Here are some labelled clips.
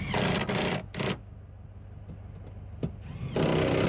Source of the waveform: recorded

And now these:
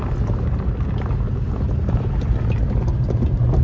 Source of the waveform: recorded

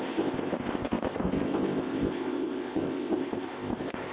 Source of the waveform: remade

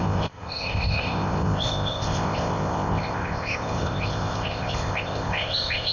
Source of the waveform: remade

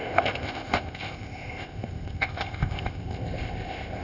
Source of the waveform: remade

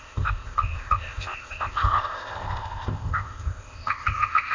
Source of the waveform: remade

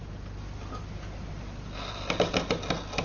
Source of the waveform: recorded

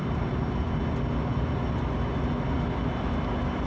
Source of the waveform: recorded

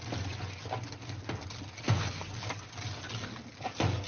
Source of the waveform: recorded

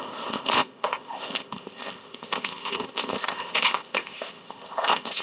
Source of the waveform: remade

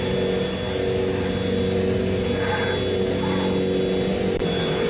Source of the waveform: recorded